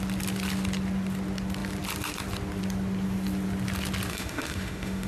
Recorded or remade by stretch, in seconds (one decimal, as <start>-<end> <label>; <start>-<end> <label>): 0.0-4.1 recorded; 4.1-5.1 remade